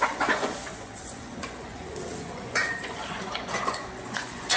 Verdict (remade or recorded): remade